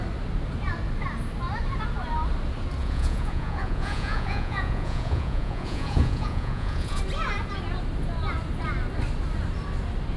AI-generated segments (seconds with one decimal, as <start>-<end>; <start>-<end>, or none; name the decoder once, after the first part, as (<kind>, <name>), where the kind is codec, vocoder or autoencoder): 2.8-7.0 (vocoder, Vocos)